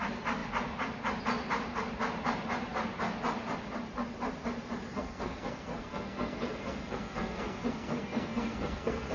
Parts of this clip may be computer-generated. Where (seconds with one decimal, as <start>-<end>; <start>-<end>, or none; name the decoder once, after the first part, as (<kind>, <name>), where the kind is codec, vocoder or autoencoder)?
4.9-9.1 (codec, SNAC)